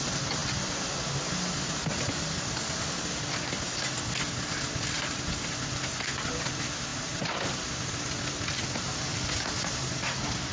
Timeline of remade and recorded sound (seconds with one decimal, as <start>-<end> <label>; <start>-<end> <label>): 0.0-10.5 recorded